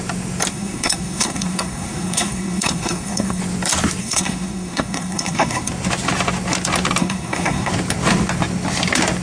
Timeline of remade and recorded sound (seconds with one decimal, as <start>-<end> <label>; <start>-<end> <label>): 0.0-0.5 recorded; 0.5-3.4 remade; 3.4-4.0 recorded; 4.0-5.7 remade; 5.7-7.0 recorded; 7.0-7.7 remade; 7.7-9.2 recorded